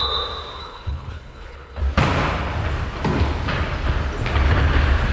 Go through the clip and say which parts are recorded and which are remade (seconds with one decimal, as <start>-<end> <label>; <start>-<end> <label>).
0.0-0.6 recorded; 0.6-1.8 remade; 1.8-5.1 recorded